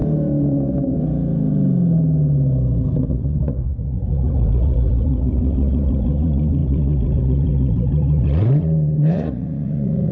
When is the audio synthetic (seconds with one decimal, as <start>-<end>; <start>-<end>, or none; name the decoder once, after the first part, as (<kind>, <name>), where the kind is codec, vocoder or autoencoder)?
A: 3.0-10.1 (vocoder, Vocos)